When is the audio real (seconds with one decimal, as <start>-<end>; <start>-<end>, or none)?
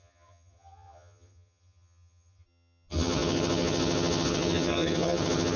none